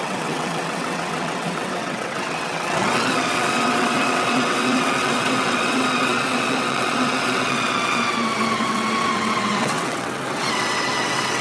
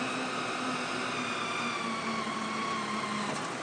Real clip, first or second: second